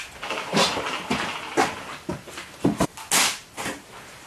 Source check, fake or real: real